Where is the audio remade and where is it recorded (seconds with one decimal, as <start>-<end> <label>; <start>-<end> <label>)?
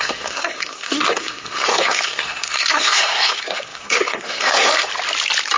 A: 0.0-4.9 remade; 4.9-5.6 recorded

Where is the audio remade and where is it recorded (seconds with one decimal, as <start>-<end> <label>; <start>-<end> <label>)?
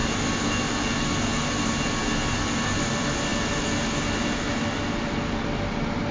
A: 0.0-0.5 remade; 0.5-6.1 recorded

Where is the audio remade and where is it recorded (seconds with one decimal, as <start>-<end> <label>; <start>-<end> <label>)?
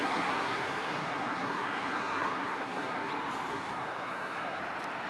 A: 0.0-3.1 remade; 3.1-3.5 recorded; 3.5-4.6 remade; 4.6-5.1 recorded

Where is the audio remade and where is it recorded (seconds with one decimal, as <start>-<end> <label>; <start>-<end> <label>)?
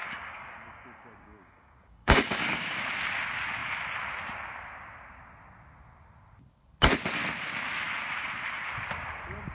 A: 0.0-2.8 remade; 2.8-9.5 recorded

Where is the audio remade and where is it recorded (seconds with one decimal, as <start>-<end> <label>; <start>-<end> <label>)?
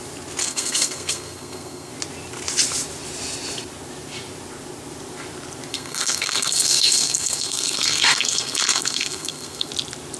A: 0.0-0.4 recorded; 0.4-1.9 remade; 1.9-5.7 recorded; 5.7-9.7 remade; 9.7-10.2 recorded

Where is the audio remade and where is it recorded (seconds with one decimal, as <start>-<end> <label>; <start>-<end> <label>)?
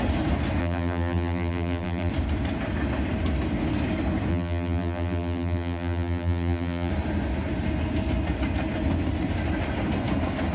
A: 0.0-0.6 recorded; 0.6-2.1 remade; 2.1-4.3 recorded; 4.3-6.9 remade; 6.9-10.5 recorded